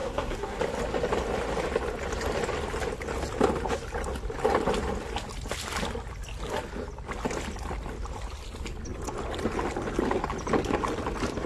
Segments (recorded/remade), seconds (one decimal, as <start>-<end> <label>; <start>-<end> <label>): 0.0-0.6 remade; 0.6-11.5 recorded